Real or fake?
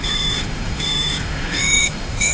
fake